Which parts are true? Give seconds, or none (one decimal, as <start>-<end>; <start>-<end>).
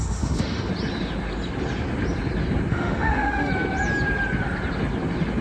0.7-2.7; 3.5-5.4